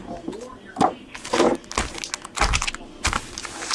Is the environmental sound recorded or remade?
recorded